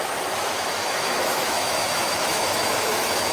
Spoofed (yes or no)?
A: yes